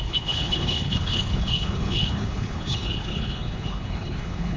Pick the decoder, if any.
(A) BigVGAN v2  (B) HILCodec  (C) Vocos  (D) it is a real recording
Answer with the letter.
B